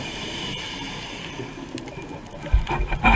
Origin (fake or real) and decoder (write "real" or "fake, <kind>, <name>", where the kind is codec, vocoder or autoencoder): real